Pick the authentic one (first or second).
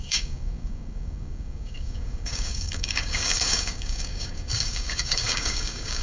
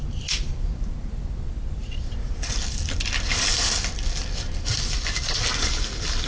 second